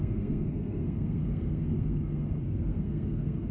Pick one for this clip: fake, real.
fake